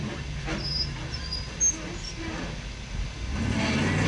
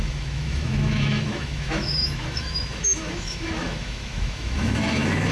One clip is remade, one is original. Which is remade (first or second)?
second